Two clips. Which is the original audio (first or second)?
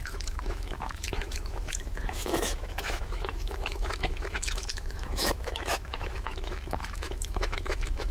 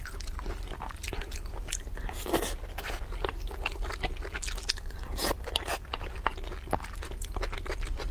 second